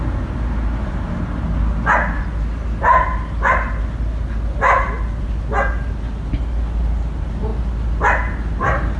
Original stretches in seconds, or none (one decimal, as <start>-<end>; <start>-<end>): 0.0-9.0